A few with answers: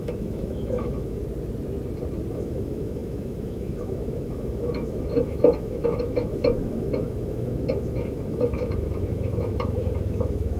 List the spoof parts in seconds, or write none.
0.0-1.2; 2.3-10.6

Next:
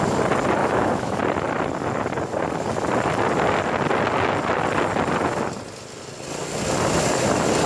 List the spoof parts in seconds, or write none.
0.6-1.2

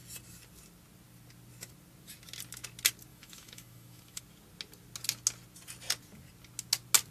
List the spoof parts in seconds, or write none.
3.1-4.2

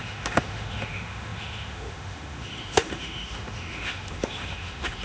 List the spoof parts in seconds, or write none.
0.0-5.0